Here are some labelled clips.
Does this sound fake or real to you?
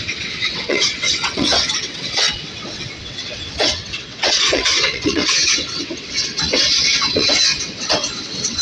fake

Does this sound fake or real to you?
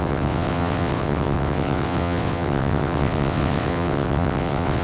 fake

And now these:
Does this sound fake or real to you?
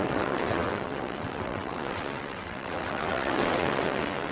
fake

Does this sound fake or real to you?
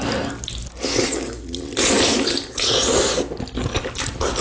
real